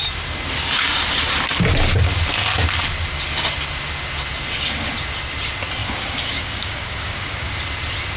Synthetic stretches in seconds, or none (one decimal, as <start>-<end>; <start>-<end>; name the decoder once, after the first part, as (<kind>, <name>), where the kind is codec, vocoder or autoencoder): 5.8-7.5 (codec, DAC)